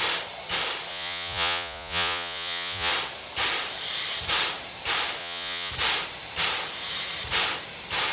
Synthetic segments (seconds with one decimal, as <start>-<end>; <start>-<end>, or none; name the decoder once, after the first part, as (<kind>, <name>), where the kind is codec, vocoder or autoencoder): 0.9-2.9 (vocoder, Vocos); 5.2-5.7